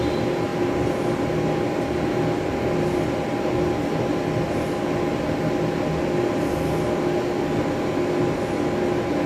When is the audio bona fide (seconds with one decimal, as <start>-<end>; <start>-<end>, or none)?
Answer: 0.0-9.3